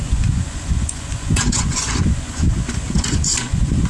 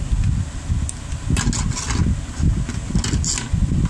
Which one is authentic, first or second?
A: second